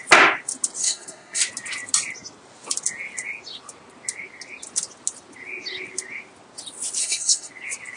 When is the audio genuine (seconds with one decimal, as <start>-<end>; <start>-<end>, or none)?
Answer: 0.0-0.8; 1.4-7.0; 7.5-8.0